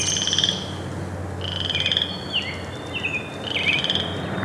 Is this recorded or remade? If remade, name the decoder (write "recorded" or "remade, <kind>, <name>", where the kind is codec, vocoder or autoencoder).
recorded